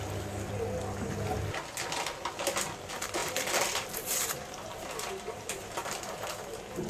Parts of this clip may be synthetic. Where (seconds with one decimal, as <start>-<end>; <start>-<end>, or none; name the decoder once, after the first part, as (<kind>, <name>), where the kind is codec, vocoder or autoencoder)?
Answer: 3.2-6.9 (vocoder, BigVGAN v2)